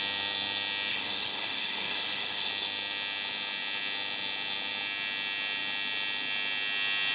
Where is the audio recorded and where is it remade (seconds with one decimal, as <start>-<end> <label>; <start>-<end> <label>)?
0.0-0.9 recorded; 0.9-2.5 remade; 2.5-7.1 recorded